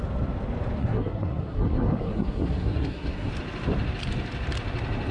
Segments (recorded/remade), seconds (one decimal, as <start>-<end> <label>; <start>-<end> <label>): 0.0-0.8 recorded; 0.8-3.3 remade; 3.3-5.1 recorded